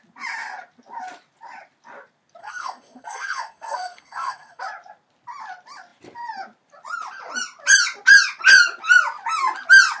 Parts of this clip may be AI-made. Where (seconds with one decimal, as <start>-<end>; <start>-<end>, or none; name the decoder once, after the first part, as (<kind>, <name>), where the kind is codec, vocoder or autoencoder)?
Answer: 2.4-4.6 (codec, SNAC)